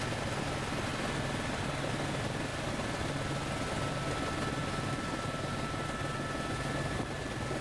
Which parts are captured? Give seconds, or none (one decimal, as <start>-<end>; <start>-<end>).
0.0-4.6; 7.1-7.6